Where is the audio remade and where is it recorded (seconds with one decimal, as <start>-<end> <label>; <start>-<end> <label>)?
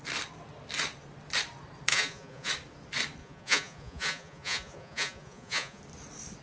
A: 0.0-1.9 recorded; 1.9-2.5 remade; 2.5-3.2 recorded; 3.2-5.8 remade; 5.8-6.4 recorded